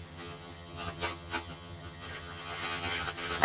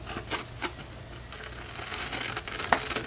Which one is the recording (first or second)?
second